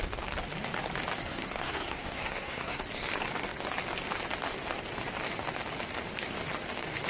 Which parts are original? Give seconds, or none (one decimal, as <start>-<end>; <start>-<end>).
0.0-1.2; 2.8-7.1